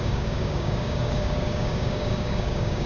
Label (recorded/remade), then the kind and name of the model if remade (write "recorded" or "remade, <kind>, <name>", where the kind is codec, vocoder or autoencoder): remade, codec, DAC